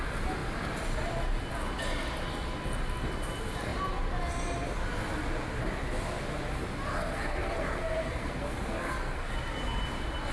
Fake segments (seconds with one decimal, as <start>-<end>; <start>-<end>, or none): 6.9-9.3